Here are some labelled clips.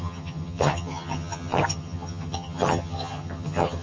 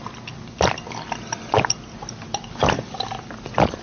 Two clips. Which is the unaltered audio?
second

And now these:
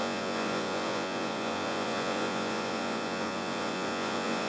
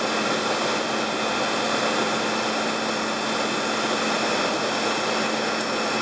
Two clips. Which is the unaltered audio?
second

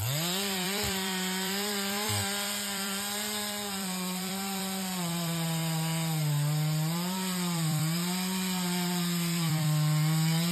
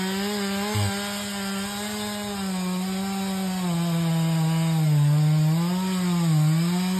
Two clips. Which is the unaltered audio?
second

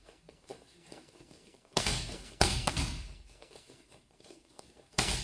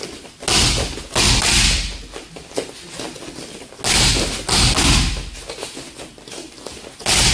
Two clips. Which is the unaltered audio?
second